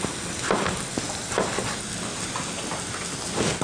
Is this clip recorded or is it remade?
recorded